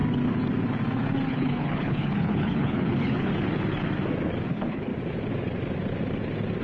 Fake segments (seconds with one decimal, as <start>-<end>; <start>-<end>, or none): 1.3-3.3; 4.5-4.9